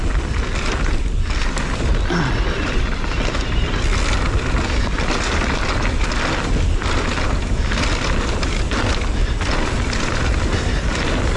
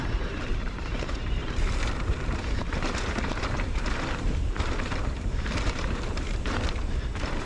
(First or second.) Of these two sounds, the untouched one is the first